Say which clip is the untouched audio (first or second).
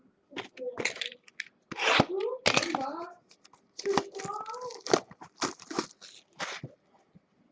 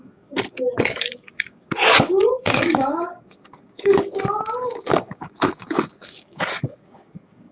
first